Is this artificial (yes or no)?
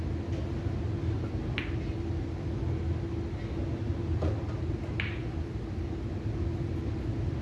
no